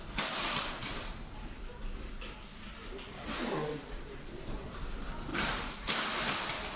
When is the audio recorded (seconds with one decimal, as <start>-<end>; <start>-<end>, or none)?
0.0-0.8; 1.9-2.8; 4.6-5.3; 6.0-6.8